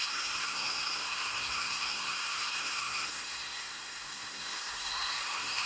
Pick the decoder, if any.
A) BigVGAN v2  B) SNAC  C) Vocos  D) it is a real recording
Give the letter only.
B